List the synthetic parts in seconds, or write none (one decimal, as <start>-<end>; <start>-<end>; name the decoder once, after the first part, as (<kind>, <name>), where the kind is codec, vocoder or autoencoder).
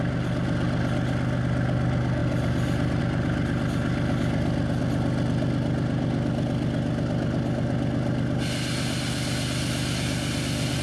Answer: none